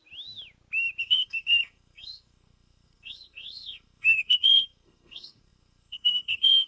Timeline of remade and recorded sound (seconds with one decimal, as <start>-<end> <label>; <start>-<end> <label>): 0.0-1.0 recorded; 1.0-6.7 remade